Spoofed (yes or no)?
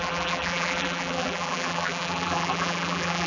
yes